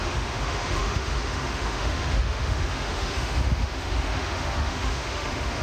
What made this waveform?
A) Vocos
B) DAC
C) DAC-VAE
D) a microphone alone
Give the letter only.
C